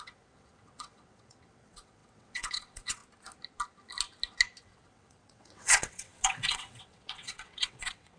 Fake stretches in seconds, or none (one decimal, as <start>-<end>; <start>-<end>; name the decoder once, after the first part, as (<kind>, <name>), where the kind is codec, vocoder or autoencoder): 0.0-3.0 (vocoder, WaveNeXt); 4.6-8.2